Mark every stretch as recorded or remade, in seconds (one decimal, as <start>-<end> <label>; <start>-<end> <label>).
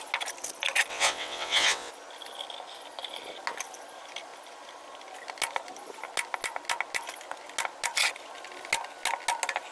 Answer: 0.0-0.9 recorded; 0.9-1.9 remade; 1.9-9.7 recorded